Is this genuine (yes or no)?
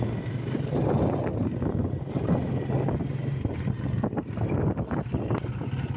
yes